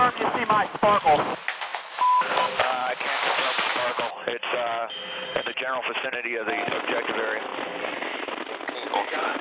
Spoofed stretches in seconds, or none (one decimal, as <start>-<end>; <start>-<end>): none